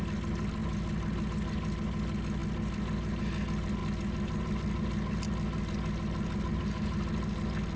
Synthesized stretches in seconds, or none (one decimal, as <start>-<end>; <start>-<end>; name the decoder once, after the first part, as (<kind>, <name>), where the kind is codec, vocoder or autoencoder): none